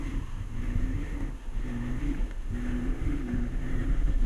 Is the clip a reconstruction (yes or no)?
yes